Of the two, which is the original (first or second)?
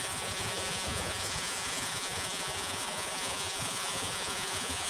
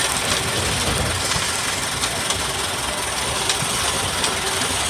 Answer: second